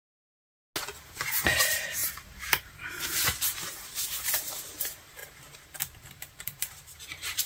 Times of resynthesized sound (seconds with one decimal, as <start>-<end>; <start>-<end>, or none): 0.0-0.5; 1.1-7.5